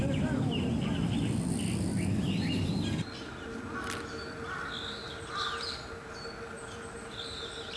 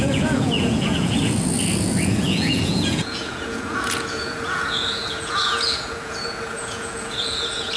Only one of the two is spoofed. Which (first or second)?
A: second